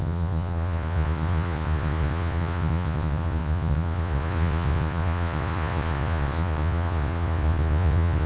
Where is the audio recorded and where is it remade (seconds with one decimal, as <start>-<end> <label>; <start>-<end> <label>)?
0.0-8.3 remade